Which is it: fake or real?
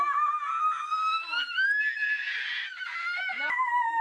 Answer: real